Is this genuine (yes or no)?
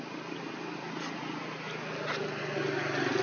yes